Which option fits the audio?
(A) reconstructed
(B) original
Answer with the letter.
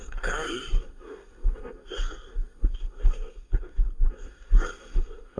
A